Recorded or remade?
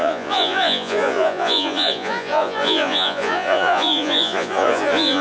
remade